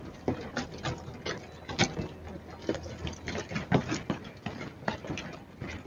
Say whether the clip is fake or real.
real